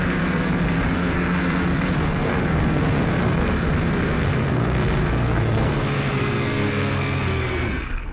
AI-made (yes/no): yes